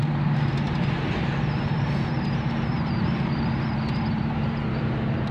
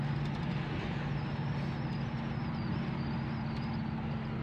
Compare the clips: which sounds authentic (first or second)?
second